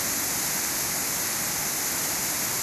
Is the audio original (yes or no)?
yes